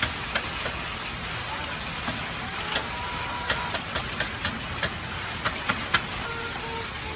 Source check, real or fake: real